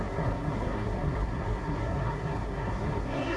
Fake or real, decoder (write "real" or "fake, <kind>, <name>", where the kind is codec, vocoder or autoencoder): fake, codec, SNAC